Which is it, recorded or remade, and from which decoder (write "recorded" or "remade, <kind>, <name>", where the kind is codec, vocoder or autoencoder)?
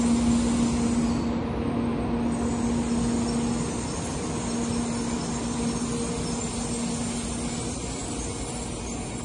recorded